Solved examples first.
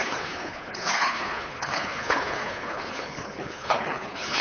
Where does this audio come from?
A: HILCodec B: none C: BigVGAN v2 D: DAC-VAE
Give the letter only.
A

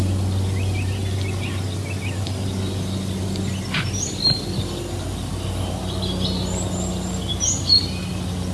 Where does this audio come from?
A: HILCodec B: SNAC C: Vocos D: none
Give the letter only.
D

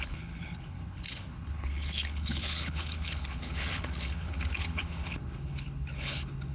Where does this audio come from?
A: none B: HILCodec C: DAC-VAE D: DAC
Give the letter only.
B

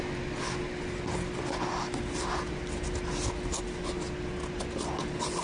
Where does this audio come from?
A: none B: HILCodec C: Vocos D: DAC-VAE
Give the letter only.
A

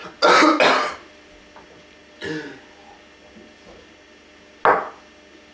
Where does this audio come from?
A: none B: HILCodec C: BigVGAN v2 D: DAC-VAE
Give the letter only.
A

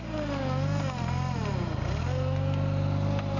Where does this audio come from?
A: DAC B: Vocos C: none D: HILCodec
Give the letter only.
C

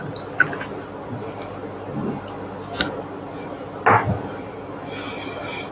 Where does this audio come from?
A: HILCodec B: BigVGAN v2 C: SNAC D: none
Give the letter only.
D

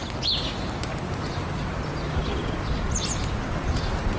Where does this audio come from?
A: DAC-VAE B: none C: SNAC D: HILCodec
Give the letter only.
B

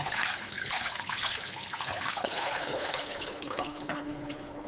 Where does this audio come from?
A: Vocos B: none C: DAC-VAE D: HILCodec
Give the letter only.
D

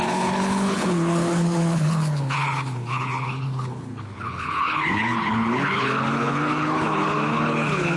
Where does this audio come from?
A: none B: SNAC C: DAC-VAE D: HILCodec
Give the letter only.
D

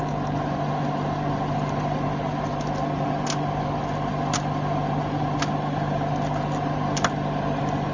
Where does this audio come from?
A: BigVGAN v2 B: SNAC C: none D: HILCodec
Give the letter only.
C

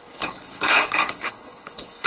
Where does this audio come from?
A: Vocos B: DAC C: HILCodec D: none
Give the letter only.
C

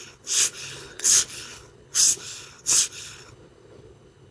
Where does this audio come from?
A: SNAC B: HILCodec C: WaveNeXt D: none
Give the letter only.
B